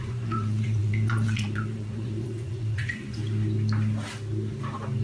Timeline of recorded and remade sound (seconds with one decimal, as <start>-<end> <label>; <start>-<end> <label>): 0.0-3.2 remade; 3.2-5.0 recorded